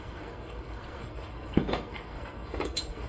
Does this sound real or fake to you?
fake